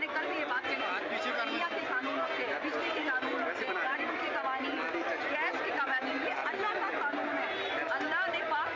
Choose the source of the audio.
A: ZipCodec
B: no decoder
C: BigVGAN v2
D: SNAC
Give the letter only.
B